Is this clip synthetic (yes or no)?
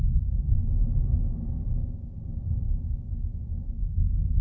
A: no